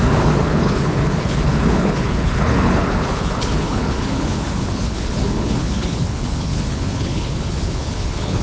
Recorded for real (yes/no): no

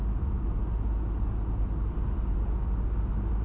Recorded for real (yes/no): yes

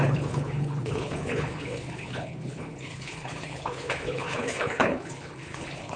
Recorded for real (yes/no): no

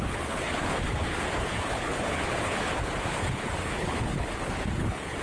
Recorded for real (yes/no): no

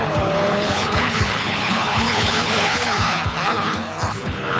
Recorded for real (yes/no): no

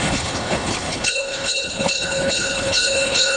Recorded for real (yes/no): no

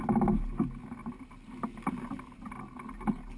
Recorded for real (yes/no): yes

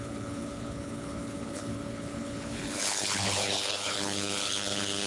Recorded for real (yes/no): no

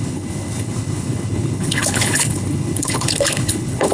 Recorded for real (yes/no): no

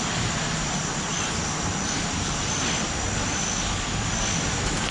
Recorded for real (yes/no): yes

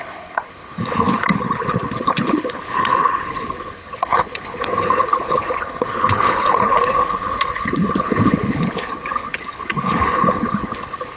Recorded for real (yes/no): no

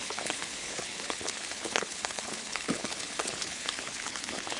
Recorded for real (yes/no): no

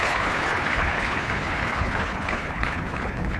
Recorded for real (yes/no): no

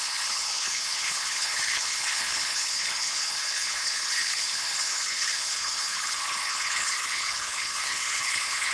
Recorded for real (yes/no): no